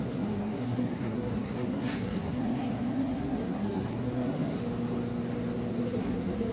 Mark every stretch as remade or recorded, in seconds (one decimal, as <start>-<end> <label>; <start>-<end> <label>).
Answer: 0.0-4.6 remade; 4.6-5.7 recorded; 5.7-6.5 remade